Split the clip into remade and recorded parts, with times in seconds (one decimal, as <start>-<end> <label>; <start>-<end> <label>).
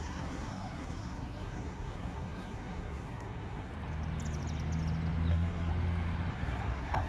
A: 0.0-3.7 remade; 3.7-5.3 recorded; 5.3-5.7 remade; 5.7-6.3 recorded; 6.3-7.1 remade